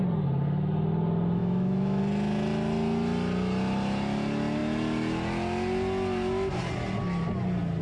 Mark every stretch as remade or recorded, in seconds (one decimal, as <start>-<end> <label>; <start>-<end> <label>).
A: 0.0-1.4 recorded; 1.4-2.0 remade; 2.0-7.8 recorded